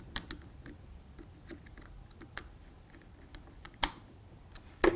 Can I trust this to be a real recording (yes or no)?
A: yes